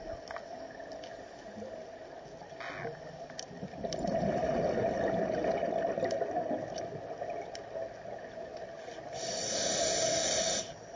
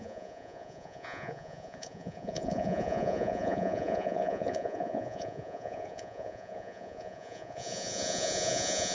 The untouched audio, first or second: first